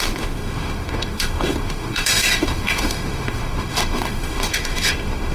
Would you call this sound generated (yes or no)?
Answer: yes